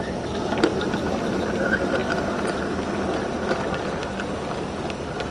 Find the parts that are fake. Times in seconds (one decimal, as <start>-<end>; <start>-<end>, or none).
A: 0.0-4.0